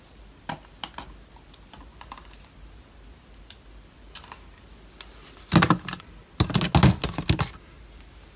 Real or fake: real